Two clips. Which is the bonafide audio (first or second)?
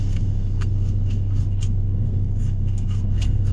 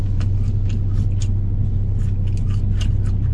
second